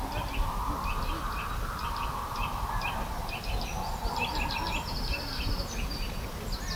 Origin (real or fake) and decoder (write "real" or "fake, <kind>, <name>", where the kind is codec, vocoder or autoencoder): real